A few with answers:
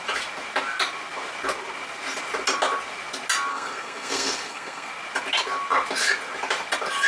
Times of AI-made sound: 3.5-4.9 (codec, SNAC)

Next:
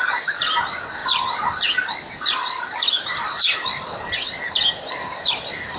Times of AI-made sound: 1.0-4.5 (vocoder, BigVGAN v2)

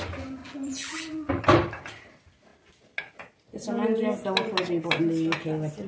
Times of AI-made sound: 0.4-1.4 (vocoder, BigVGAN v2)

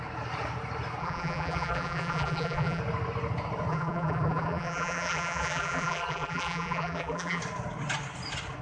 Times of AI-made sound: 1.0-2.8 (vocoder, BigVGAN v2); 3.7-7.4

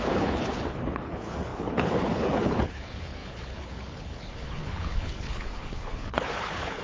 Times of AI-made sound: 0.0-6.8 (codec, HILCodec)

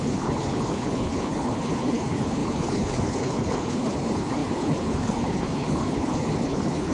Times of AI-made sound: 0.0-6.9 (codec, HILCodec)